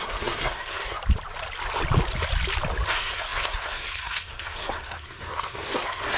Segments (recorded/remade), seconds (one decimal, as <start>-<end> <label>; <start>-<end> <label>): 0.0-1.0 remade; 1.0-2.9 recorded; 2.9-6.2 remade